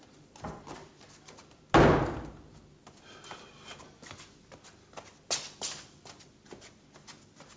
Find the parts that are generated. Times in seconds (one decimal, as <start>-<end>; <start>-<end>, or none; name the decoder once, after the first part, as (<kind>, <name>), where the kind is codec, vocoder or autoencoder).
none